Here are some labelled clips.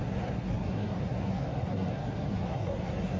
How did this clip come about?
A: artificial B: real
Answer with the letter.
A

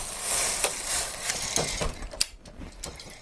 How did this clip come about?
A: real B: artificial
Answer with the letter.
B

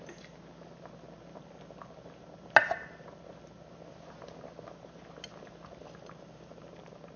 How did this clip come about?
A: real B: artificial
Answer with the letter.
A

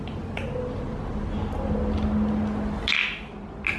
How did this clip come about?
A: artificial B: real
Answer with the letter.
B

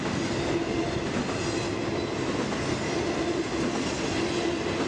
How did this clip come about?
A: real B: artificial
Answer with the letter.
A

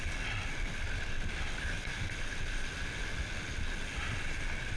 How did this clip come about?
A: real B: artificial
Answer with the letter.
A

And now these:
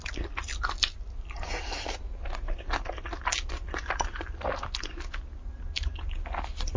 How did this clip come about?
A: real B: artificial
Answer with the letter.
A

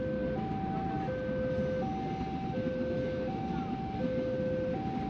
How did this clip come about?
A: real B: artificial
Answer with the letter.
A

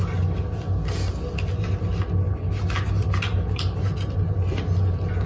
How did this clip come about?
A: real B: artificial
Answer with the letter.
A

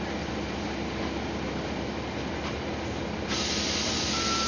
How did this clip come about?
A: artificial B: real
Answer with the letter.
B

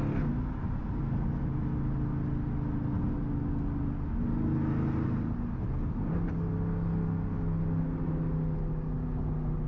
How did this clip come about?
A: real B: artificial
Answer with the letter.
A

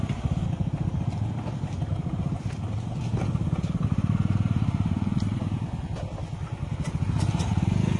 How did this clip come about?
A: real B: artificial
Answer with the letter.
A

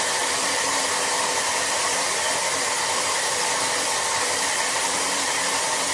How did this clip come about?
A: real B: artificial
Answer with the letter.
B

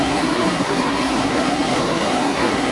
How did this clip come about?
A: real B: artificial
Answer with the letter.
B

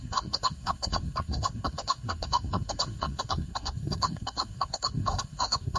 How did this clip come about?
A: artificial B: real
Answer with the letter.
A